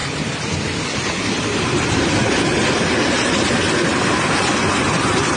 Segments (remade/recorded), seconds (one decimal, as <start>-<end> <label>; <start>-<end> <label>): 0.0-5.4 recorded